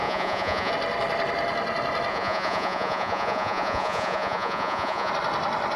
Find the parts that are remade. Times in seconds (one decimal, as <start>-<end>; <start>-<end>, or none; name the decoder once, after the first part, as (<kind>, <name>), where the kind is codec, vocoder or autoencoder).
0.0-0.7 (vocoder, Vocos); 2.1-5.1